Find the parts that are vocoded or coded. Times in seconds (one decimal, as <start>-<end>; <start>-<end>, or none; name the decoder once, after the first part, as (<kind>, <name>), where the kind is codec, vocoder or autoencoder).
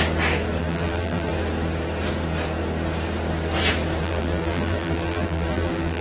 0.6-1.3 (vocoder, BigVGAN v2); 4.0-6.0